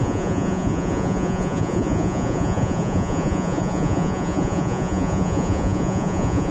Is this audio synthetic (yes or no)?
yes